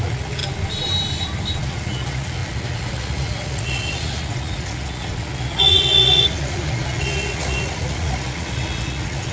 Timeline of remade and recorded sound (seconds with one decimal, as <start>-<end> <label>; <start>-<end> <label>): 0.0-0.4 remade; 0.4-1.6 recorded; 1.6-9.3 remade